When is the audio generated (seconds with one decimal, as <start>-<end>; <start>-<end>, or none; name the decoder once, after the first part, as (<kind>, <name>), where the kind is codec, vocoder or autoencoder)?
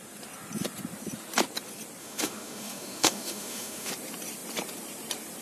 2.0-3.9 (autoencoder, DAC-VAE)